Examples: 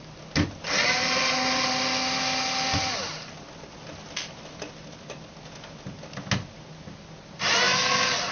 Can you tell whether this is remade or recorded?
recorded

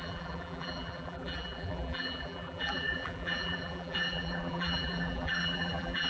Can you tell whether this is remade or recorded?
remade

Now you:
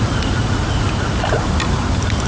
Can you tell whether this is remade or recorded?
recorded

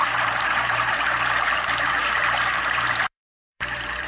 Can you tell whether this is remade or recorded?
remade